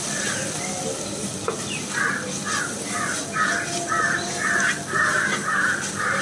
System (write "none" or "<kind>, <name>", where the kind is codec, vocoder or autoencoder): none